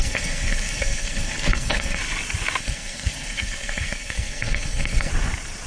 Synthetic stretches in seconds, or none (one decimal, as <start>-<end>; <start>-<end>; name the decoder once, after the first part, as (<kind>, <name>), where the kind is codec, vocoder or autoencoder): 0.0-2.0 (codec, SNAC); 2.6-5.1